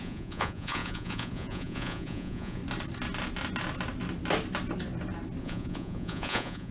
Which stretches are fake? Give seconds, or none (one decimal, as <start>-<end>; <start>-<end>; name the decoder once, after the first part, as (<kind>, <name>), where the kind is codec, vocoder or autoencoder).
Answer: 0.0-2.6 (vocoder, Vocos); 5.4-6.7